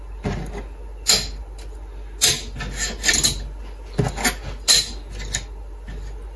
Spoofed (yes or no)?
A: no